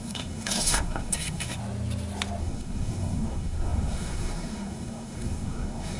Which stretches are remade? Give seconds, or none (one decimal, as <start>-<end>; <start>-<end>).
0.0-1.6; 2.4-6.0